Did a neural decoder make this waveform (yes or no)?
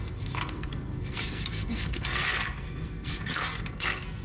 yes